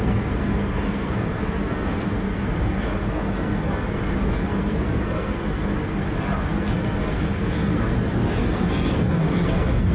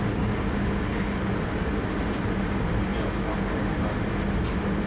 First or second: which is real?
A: second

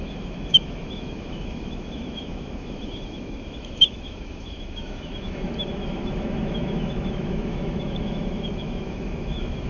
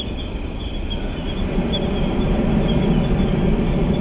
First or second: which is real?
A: second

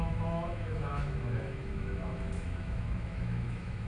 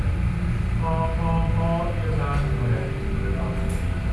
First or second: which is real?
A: second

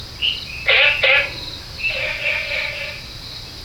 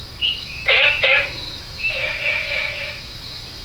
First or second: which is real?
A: first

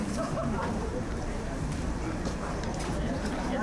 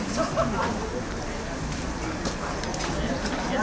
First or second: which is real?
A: second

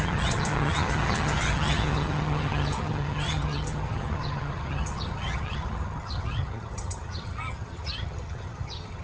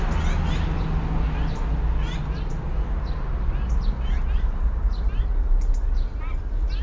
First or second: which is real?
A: second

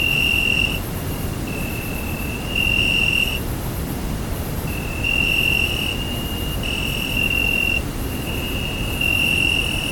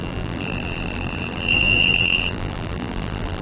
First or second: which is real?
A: first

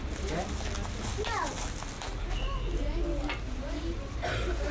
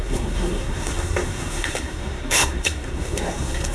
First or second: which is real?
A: first